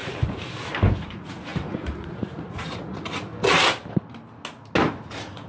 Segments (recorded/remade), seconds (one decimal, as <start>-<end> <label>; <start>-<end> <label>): 0.0-1.0 recorded; 1.0-3.3 remade; 3.3-4.9 recorded; 4.9-5.5 remade